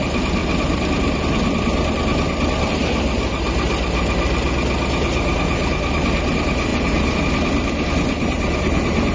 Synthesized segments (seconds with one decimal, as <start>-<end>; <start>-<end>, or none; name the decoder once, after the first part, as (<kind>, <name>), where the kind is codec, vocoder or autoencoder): 0.4-1.2 (vocoder, BigVGAN v2); 6.7-7.2